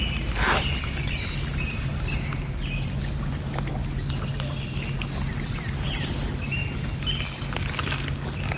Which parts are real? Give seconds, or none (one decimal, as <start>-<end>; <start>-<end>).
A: 0.0-8.6